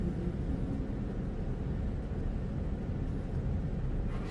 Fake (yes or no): no